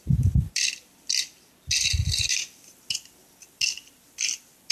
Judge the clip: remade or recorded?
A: recorded